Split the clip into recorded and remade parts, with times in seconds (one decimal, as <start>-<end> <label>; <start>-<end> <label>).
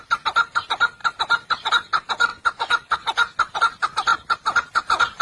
0.0-1.0 recorded; 1.0-1.7 remade; 1.7-5.2 recorded